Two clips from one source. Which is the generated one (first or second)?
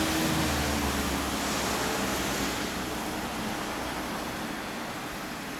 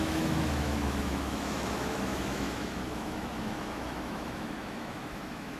second